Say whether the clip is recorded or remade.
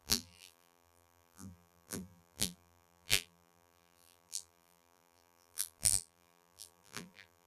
remade